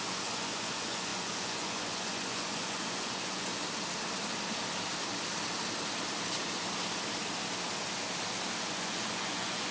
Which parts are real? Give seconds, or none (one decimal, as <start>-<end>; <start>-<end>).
3.5-8.6